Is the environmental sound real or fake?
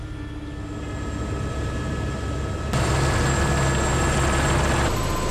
real